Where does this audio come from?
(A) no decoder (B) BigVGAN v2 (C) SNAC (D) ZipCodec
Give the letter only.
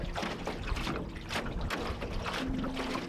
A